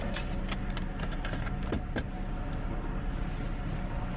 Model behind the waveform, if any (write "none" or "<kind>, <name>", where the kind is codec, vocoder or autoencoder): none